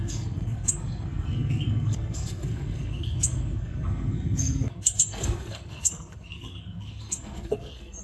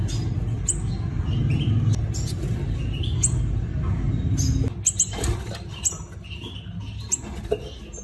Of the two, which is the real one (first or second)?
second